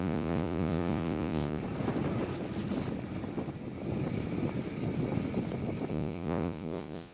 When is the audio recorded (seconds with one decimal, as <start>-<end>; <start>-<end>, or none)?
1.6-5.9